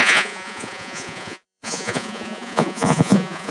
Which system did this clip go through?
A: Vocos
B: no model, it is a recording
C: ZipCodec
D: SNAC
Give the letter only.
A